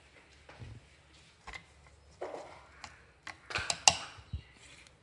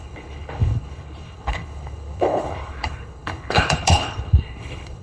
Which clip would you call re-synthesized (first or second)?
second